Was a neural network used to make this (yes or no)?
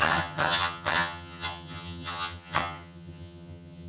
yes